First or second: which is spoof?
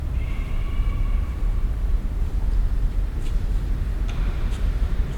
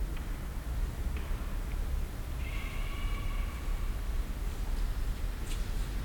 first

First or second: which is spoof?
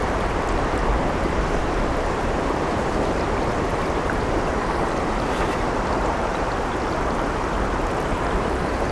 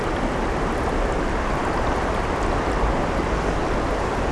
first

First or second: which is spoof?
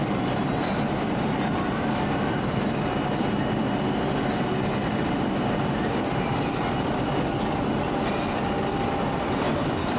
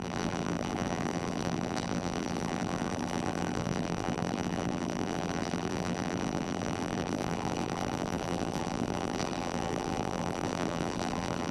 second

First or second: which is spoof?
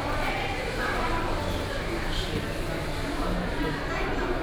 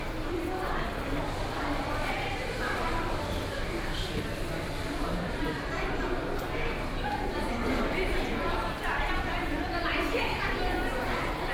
second